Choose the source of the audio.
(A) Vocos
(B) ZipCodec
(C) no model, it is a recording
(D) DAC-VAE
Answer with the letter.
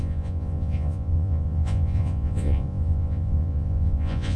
A